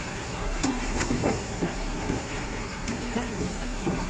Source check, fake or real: fake